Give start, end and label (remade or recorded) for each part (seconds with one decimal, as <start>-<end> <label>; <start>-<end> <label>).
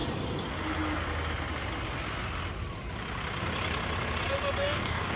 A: 0.0-4.6 recorded; 4.6-5.2 remade